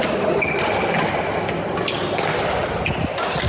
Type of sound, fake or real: real